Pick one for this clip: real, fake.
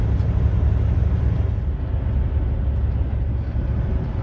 real